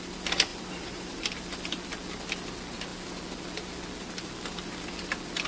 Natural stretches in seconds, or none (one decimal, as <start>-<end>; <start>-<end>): 0.0-0.5; 1.3-5.5